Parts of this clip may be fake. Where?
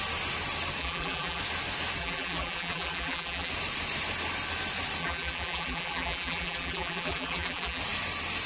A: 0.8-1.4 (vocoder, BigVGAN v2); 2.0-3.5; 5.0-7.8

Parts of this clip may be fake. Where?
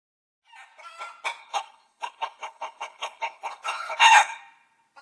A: 1.4-4.4 (codec, HILCodec)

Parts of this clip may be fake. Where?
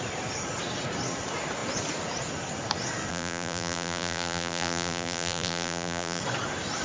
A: 3.1-6.2 (vocoder, BigVGAN v2)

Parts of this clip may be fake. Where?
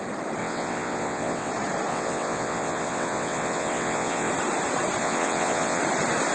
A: 0.4-1.5 (vocoder, WaveNeXt); 1.9-4.3; 5.0-5.8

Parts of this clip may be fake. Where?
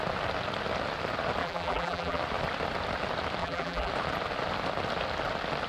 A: 1.4-2.2 (vocoder, BigVGAN v2); 3.4-3.9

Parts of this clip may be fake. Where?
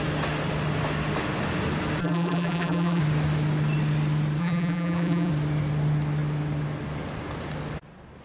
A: 2.0-3.0 (vocoder, BigVGAN v2); 4.4-5.3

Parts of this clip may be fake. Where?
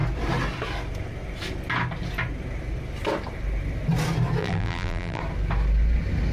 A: 4.4-5.2 (vocoder, BigVGAN v2)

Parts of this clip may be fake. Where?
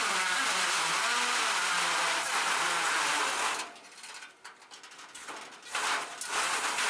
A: none